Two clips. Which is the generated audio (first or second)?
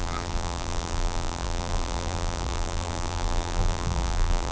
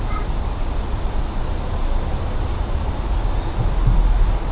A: first